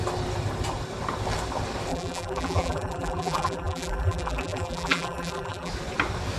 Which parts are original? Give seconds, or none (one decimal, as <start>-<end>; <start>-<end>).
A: 0.0-1.9; 5.7-6.4